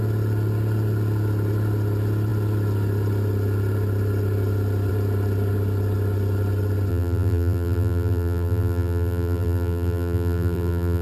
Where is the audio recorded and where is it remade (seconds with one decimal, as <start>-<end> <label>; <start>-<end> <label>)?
0.0-6.9 recorded; 6.9-11.0 remade